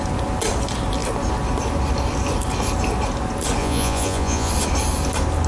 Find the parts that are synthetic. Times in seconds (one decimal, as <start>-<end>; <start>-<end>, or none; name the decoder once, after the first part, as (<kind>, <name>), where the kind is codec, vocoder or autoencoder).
3.6-4.5 (vocoder, Vocos)